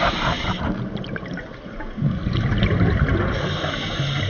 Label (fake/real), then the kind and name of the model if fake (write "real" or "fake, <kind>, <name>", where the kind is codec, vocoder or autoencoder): real